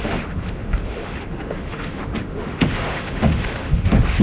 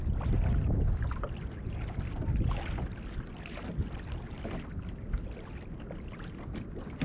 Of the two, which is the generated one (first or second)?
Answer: first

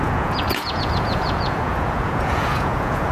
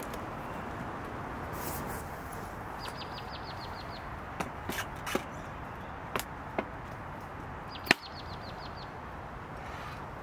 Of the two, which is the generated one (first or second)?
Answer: first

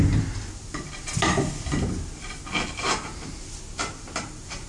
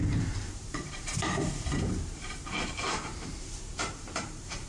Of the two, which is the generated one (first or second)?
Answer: second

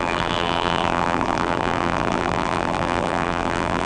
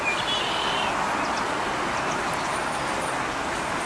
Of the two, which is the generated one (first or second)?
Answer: first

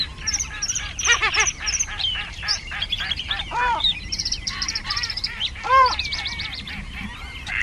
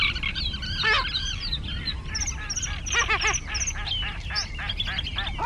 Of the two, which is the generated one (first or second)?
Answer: first